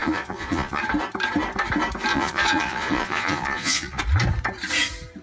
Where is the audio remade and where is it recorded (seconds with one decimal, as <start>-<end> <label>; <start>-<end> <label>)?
0.0-0.8 remade; 0.8-2.1 recorded; 2.1-4.0 remade; 4.0-5.2 recorded